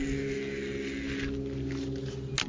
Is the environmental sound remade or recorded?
recorded